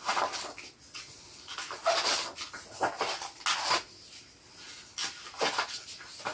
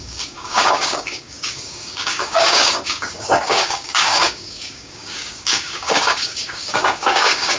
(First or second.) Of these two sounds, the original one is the first